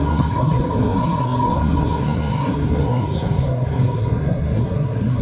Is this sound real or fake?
fake